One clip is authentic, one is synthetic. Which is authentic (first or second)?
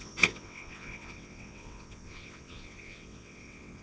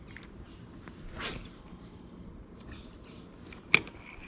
second